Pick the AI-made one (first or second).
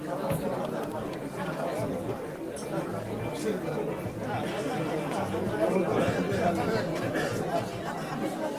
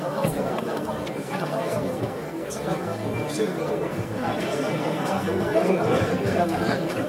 second